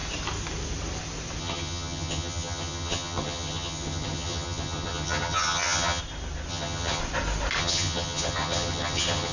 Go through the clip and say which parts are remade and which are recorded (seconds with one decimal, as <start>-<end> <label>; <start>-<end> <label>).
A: 0.0-1.4 recorded; 1.4-6.0 remade; 6.0-6.5 recorded; 6.5-7.0 remade; 7.0-7.6 recorded; 7.6-9.3 remade